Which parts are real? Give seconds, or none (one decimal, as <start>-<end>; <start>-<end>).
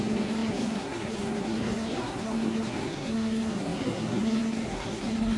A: none